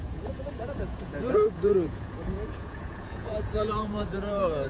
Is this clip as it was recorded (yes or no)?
no